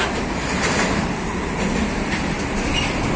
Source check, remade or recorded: recorded